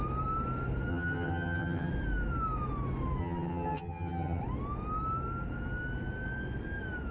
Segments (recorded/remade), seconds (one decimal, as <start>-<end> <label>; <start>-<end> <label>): 0.0-0.9 recorded; 0.9-1.9 remade; 1.9-3.2 recorded; 3.2-4.4 remade; 4.4-7.1 recorded